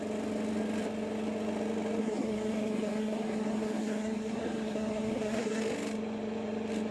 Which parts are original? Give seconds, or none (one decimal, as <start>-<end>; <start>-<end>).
0.0-2.0; 5.6-6.9